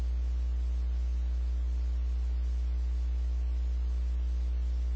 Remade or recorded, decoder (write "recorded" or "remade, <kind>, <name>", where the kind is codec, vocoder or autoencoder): recorded